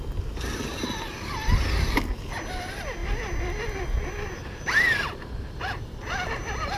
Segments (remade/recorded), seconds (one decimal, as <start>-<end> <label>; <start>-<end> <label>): 0.0-6.8 recorded